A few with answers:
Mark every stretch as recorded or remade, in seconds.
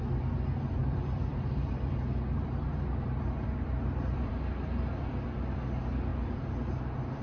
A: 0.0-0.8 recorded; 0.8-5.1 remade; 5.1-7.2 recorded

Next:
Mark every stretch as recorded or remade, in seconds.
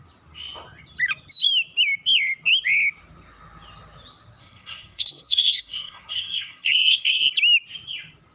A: 0.0-4.4 recorded; 4.4-7.3 remade; 7.3-8.3 recorded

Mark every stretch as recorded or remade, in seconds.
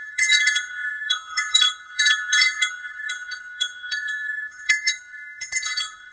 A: 0.0-6.1 remade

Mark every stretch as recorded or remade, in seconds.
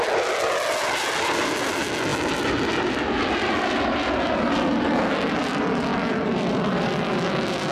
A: 0.0-5.9 recorded; 5.9-7.2 remade; 7.2-7.7 recorded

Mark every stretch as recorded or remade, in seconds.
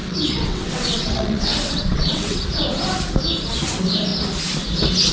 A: 0.0-2.4 remade; 2.4-5.1 recorded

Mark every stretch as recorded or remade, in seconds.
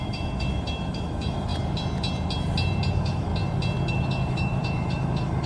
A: 0.0-1.5 remade; 1.5-2.9 recorded; 2.9-3.3 remade; 3.3-3.9 recorded; 3.9-5.5 remade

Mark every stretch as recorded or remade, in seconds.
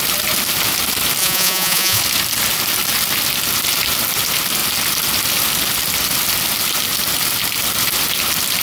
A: 0.0-1.2 recorded; 1.2-2.0 remade; 2.0-8.6 recorded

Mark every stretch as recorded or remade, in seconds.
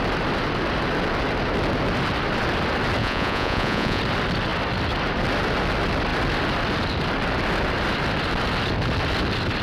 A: 0.0-3.0 recorded; 3.0-4.0 remade; 4.0-9.6 recorded